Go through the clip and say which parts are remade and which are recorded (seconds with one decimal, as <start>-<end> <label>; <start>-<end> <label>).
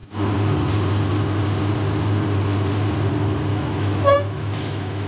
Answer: 0.0-3.5 recorded; 3.5-5.1 remade